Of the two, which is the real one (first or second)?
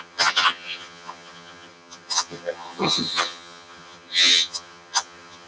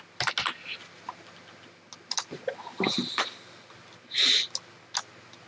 second